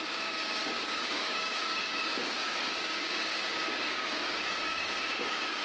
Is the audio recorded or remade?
remade